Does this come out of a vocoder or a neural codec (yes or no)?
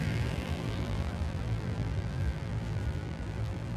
yes